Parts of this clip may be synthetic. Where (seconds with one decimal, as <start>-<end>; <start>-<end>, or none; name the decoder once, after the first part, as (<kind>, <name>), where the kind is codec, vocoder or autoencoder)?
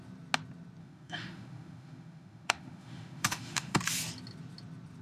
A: 0.8-3.8 (autoencoder, DAC-VAE)